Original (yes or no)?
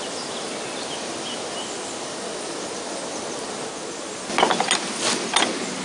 yes